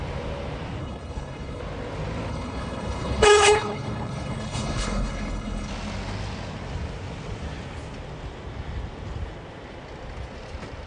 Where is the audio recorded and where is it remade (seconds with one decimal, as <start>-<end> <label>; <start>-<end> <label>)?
0.0-0.8 recorded; 0.8-1.6 remade; 1.6-2.3 recorded; 2.3-5.7 remade; 5.7-10.9 recorded